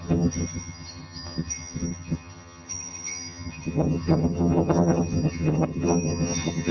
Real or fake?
fake